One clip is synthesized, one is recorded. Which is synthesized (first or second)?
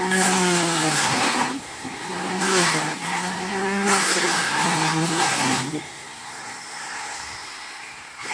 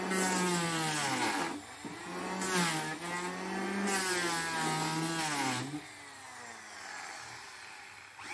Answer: first